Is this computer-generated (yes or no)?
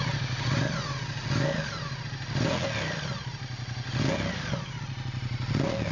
no